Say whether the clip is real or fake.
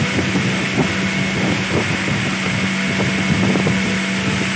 real